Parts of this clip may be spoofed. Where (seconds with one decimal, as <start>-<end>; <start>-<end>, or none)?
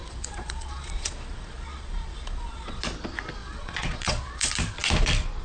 0.0-2.8; 3.4-4.5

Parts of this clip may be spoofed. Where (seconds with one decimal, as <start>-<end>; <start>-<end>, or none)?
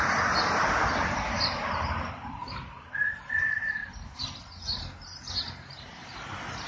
none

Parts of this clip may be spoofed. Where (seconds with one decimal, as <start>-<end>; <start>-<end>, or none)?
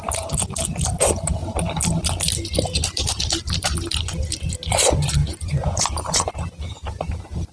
5.2-6.3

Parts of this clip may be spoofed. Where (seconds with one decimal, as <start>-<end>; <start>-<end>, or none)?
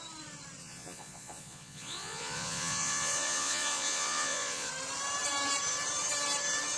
0.6-4.7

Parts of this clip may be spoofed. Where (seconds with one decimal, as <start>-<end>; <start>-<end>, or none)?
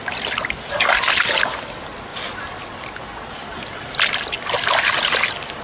none